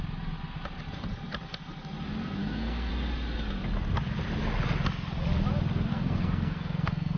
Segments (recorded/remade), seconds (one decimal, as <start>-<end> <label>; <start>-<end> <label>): 0.0-2.4 recorded; 2.4-2.9 remade; 2.9-5.9 recorded; 5.9-7.2 remade